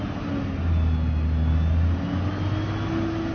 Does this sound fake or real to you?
real